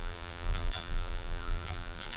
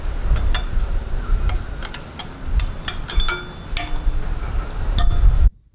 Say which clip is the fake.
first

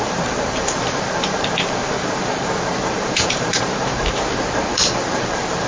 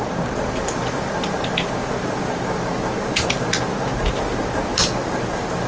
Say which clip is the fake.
first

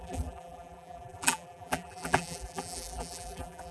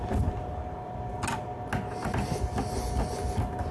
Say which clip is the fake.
first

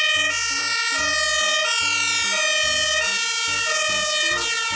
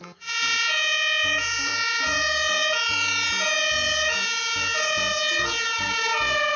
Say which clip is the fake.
second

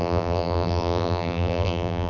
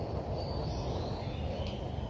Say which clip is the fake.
first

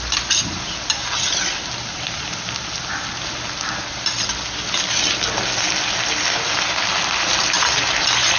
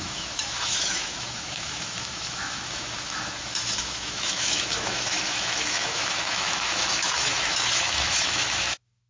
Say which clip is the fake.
second